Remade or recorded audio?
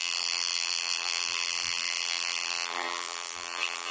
remade